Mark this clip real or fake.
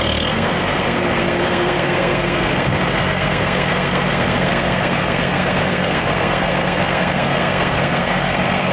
fake